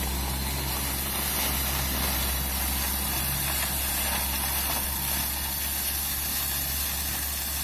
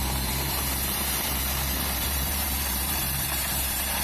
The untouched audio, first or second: first